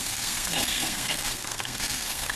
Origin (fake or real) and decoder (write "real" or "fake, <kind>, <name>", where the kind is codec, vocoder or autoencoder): fake, codec, SNAC